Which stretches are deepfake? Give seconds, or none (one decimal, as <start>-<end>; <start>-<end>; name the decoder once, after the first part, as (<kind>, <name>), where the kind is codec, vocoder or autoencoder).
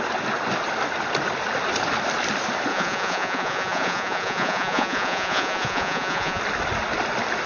2.7-6.4 (vocoder, Vocos)